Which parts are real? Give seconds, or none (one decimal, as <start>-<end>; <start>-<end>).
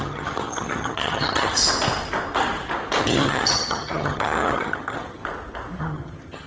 1.6-3.0; 5.2-5.8